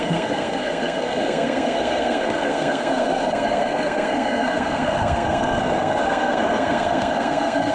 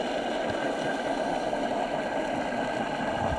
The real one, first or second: second